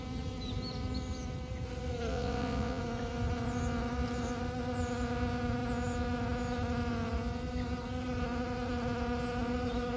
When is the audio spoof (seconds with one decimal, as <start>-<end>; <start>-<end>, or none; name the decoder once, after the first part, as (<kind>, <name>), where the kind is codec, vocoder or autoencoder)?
2.1-2.8 (vocoder, WaveNeXt)